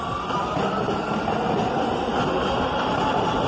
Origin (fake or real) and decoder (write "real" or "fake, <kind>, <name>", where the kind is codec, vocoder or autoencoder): real